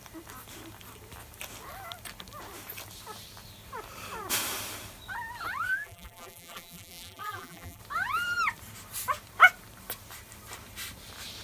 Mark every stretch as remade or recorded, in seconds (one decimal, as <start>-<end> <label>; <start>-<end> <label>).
0.0-5.7 recorded; 5.7-7.8 remade; 7.8-11.4 recorded